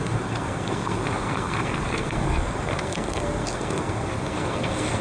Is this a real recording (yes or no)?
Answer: no